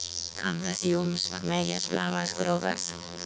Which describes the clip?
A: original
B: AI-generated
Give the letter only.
B